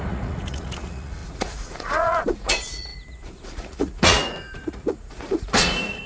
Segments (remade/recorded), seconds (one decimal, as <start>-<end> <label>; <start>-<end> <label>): 0.0-6.1 remade